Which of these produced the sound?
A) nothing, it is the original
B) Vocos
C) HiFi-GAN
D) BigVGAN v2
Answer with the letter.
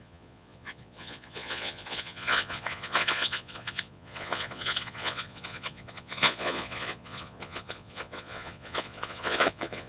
B